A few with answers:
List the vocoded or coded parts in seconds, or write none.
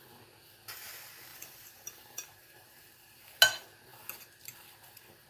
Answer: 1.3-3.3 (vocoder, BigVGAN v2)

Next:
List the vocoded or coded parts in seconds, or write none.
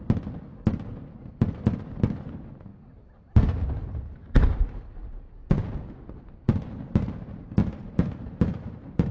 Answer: 2.7-5.1 (vocoder, BigVGAN v2); 7.6-9.1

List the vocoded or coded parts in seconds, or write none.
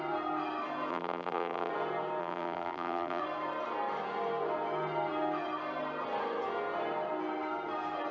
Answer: 0.9-1.7 (vocoder, BigVGAN v2); 2.2-3.2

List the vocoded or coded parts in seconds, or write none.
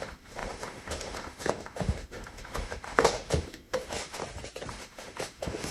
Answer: 0.0-4.2 (autoencoder, DAC-VAE); 4.7-5.7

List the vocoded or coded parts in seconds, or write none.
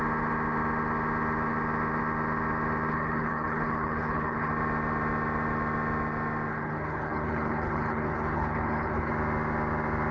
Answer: 2.9-4.5 (codec, HILCodec); 6.5-9.1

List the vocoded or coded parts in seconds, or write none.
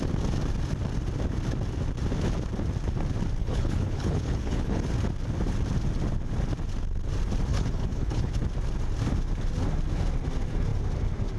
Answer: 3.4-4.9 (codec, HILCodec); 7.5-8.3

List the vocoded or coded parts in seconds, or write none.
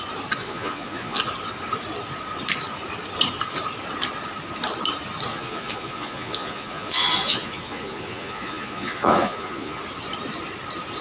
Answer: 0.4-1.2 (vocoder, Vocos); 5.3-9.8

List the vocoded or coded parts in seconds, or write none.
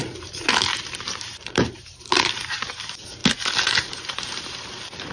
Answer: 0.0-3.2 (vocoder, BigVGAN v2); 3.9-5.1